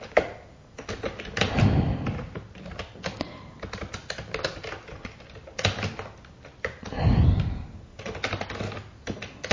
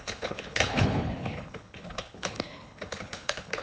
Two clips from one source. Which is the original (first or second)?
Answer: first